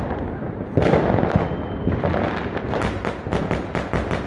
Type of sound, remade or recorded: recorded